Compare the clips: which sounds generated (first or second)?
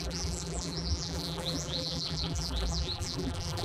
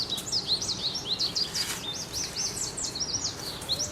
first